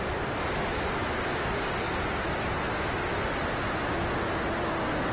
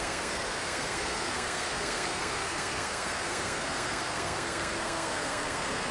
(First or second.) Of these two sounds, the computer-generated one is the second